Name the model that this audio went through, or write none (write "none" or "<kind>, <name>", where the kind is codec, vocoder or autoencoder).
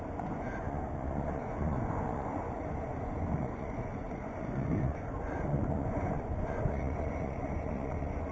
vocoder, Vocos